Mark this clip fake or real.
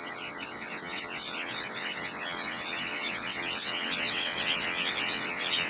fake